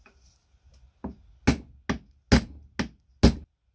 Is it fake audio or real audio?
real